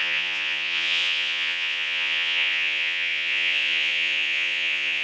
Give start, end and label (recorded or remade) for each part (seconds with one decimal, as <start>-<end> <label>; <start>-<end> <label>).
0.0-5.0 remade